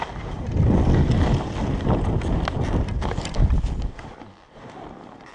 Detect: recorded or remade recorded